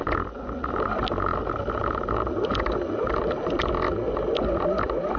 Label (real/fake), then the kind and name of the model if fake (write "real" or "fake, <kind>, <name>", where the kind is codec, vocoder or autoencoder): real